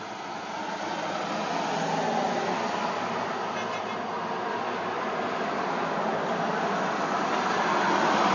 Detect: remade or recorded recorded